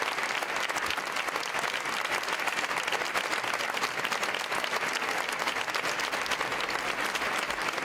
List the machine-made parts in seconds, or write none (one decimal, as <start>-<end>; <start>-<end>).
none